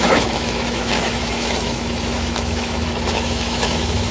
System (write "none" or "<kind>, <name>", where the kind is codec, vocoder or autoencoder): autoencoder, DAC-VAE